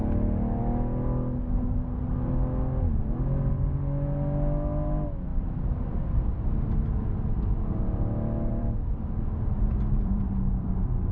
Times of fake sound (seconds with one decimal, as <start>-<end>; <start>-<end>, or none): 0.0-0.6; 5.3-6.5; 8.5-10.7